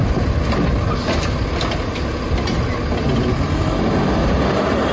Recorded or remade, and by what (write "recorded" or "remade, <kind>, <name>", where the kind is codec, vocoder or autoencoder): recorded